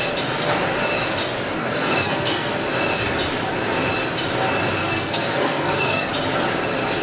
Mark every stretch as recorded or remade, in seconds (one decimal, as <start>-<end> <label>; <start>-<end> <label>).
0.0-1.6 recorded; 1.6-2.5 remade; 2.5-4.8 recorded; 4.8-6.1 remade; 6.1-7.0 recorded

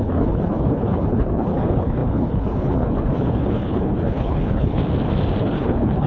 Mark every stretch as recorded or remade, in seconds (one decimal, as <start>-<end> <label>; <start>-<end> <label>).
0.0-4.8 remade; 4.8-5.4 recorded; 5.4-6.1 remade

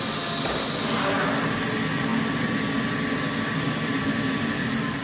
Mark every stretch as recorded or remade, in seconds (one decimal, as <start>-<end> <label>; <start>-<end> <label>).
0.0-5.0 recorded

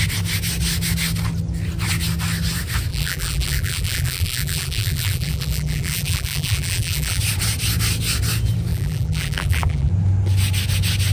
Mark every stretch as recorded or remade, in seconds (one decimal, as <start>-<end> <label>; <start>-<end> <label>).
0.0-2.9 recorded; 2.9-7.2 remade; 7.2-8.7 recorded; 8.7-9.9 remade; 9.9-11.1 recorded

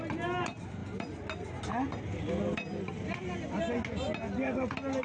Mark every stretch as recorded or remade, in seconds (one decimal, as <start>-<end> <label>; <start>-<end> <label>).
0.0-5.0 recorded

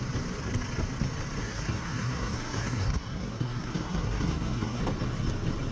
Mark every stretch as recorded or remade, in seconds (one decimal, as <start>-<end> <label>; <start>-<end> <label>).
0.0-1.4 recorded; 1.4-4.8 remade; 4.8-5.7 recorded

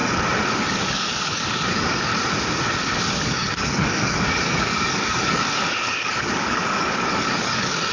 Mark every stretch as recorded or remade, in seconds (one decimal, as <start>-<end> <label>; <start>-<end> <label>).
0.0-0.6 recorded; 0.6-2.1 remade; 2.1-2.9 recorded; 2.9-7.9 remade

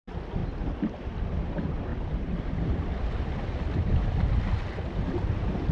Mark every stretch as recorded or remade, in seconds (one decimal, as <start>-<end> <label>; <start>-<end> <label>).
0.0-5.7 recorded